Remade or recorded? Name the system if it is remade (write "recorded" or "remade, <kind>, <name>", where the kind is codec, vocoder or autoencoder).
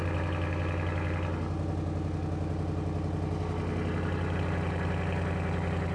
recorded